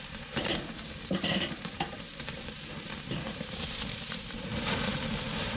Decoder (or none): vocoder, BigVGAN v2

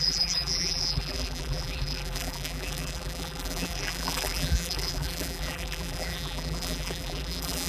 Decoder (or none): vocoder, BigVGAN v2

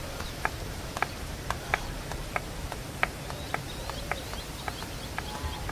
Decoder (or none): vocoder, BigVGAN v2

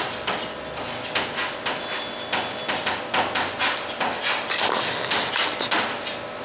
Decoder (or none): none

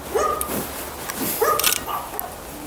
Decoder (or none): none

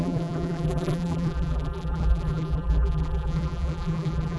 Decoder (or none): vocoder, BigVGAN v2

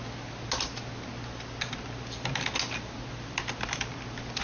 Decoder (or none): none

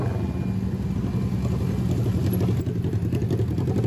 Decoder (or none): none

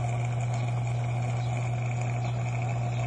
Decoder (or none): none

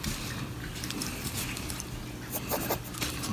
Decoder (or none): none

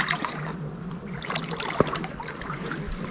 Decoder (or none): vocoder, BigVGAN v2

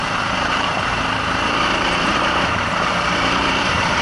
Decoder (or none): vocoder, BigVGAN v2